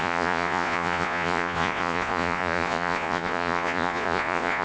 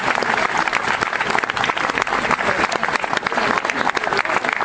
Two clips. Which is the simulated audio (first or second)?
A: first